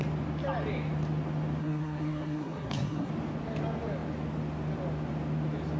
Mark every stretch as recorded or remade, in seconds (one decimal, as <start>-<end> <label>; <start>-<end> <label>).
0.0-1.6 recorded; 1.6-3.1 remade; 3.1-5.8 recorded